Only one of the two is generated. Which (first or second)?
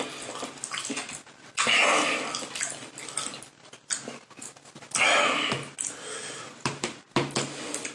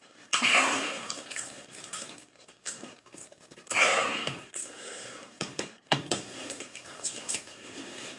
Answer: second